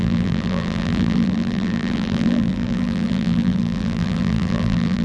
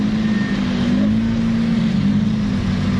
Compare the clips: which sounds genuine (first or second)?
second